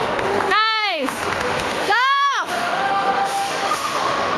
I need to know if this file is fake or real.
fake